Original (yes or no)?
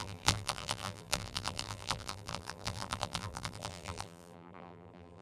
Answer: no